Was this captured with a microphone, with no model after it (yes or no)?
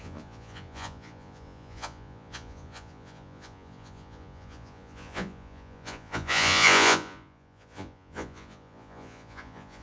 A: no